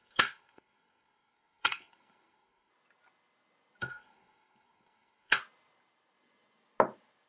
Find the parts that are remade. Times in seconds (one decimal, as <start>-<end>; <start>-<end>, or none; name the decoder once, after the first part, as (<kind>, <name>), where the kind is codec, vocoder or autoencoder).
0.0-2.7 (codec, SNAC); 3.8-5.4